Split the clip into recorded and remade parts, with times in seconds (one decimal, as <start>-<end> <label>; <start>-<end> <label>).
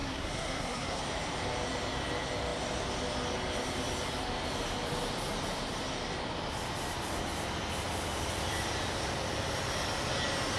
0.0-1.0 remade; 1.0-10.6 recorded